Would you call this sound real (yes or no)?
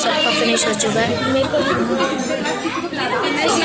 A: yes